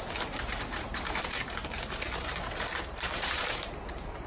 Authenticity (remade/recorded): remade